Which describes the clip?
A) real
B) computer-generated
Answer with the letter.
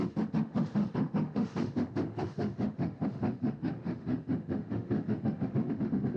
B